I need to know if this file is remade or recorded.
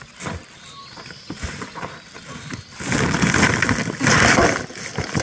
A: recorded